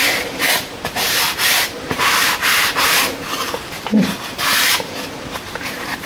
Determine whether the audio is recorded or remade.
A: remade